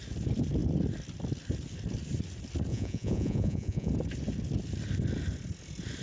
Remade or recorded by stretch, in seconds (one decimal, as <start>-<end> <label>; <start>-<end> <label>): 0.0-2.7 recorded; 2.7-3.9 remade; 3.9-6.0 recorded

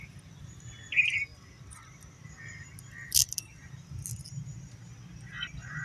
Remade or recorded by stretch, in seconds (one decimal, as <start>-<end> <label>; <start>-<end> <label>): 0.0-5.8 recorded

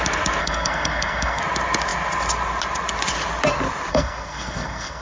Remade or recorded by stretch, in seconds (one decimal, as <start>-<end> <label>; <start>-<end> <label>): 0.0-0.4 recorded; 0.4-1.4 remade; 1.4-3.9 recorded; 3.9-5.0 remade

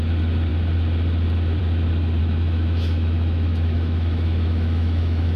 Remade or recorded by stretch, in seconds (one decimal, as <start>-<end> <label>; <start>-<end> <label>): 0.0-2.2 recorded; 2.2-5.4 remade